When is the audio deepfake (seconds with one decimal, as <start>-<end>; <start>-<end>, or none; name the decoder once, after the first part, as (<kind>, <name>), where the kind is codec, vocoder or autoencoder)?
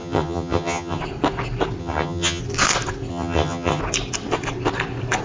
0.0-1.0 (vocoder, HiFi-GAN); 1.8-2.4; 3.1-3.8